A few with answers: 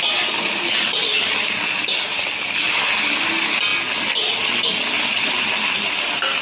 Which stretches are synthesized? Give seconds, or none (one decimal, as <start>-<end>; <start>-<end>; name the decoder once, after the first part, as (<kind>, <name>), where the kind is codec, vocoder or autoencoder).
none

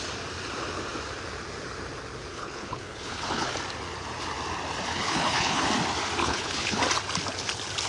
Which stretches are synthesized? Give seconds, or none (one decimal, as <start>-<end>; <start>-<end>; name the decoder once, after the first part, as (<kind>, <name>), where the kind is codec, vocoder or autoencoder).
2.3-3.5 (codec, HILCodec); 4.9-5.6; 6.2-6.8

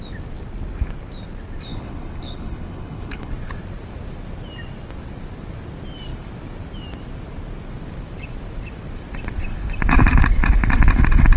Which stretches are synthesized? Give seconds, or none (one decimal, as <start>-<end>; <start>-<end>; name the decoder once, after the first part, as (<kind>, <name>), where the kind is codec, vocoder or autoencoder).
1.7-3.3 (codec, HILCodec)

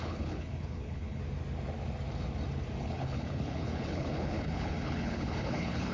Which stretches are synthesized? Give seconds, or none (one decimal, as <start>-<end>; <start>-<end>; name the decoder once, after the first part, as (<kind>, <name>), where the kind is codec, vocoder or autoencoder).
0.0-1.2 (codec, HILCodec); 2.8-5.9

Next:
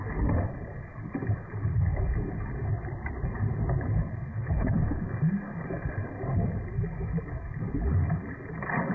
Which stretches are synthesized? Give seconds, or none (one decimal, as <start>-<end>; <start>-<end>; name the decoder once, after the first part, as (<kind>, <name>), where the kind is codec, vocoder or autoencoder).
4.3-5.0 (codec, HILCodec)

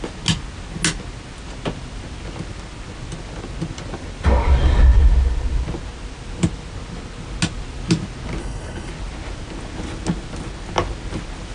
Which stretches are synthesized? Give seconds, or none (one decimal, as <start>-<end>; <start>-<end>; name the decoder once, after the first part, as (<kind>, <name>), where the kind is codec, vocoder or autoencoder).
8.4-8.9 (codec, HILCodec)